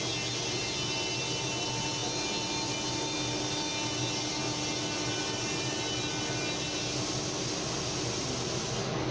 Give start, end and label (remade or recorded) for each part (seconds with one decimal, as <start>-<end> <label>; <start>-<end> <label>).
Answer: 0.0-9.1 recorded